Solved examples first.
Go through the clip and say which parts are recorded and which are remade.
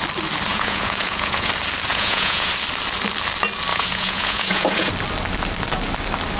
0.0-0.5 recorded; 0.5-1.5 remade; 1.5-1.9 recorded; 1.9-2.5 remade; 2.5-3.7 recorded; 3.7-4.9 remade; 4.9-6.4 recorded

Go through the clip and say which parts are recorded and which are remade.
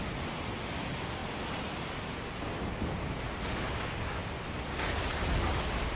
0.0-6.0 recorded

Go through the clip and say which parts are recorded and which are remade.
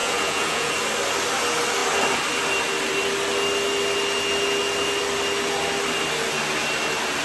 0.0-0.7 remade; 0.7-7.2 recorded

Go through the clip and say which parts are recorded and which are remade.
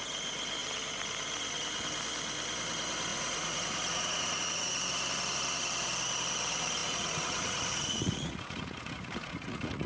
0.0-3.1 recorded; 3.1-4.7 remade; 4.7-6.8 recorded; 6.8-9.9 remade